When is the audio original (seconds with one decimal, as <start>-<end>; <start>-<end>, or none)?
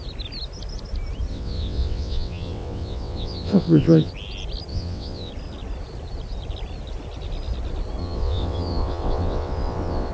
0.0-1.3; 4.1-4.7; 5.3-8.0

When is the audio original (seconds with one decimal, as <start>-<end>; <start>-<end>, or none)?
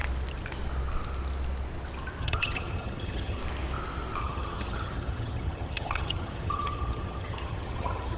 0.0-2.2; 3.4-4.2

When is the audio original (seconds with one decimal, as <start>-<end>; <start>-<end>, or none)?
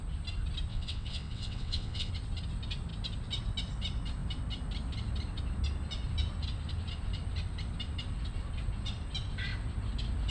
0.0-0.7; 2.1-10.3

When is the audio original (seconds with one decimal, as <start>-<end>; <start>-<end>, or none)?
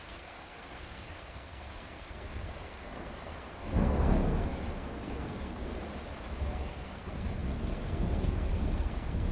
5.7-6.4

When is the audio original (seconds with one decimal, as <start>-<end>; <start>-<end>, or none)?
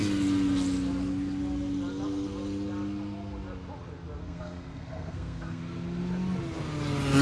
0.0-4.2; 5.6-7.2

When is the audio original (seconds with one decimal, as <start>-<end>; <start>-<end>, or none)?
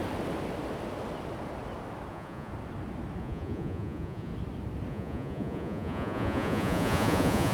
0.0-2.1; 2.5-3.2; 4.3-4.9